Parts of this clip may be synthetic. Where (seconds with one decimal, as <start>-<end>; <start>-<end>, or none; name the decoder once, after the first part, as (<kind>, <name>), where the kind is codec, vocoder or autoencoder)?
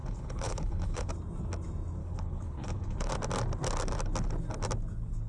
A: 0.0-1.1 (codec, HILCodec); 2.0-3.1